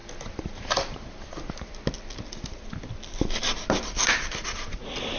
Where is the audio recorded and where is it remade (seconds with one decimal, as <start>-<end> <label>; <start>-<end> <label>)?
0.0-5.2 recorded